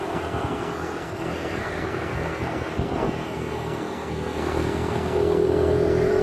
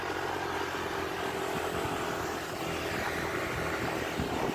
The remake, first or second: first